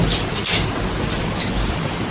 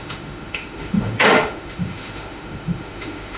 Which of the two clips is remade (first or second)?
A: second